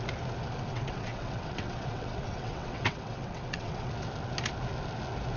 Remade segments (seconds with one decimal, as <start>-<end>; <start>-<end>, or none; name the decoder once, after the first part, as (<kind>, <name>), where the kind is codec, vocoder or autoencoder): 0.7-3.9 (vocoder, WaveNeXt)